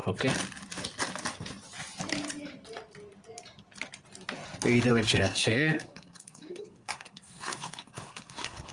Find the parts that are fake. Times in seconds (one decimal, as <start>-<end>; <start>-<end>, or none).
4.9-8.7